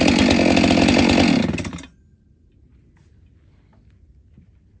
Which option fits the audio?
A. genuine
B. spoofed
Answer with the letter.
A